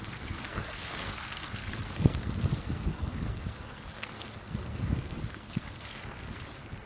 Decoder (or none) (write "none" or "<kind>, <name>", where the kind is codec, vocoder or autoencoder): codec, SNAC